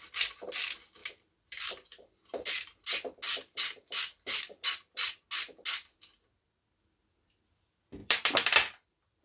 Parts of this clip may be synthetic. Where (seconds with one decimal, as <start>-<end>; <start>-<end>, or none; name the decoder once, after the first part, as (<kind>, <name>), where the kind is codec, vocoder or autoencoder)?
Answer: 1.0-1.6 (vocoder, BigVGAN v2); 3.3-5.0; 8.0-9.2